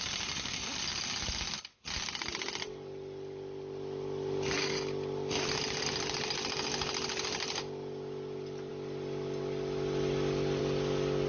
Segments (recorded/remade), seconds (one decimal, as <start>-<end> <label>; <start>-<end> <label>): 0.0-11.3 recorded